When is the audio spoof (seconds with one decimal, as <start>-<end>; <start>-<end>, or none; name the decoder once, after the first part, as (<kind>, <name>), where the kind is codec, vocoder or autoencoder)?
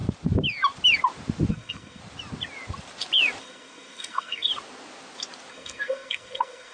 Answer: 1.5-2.0 (codec, SNAC); 3.4-4.5; 5.5-6.7